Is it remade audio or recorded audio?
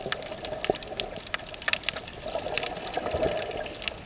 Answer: recorded